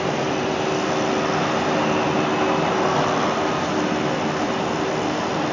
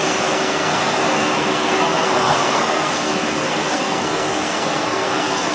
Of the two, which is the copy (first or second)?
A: second